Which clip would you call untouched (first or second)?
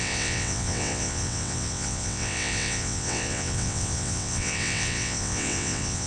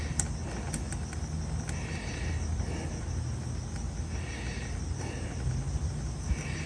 second